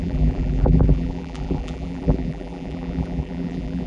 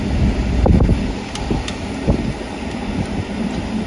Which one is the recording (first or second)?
second